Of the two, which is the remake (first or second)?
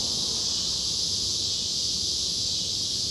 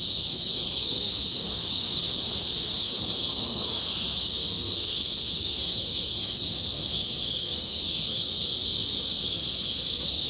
second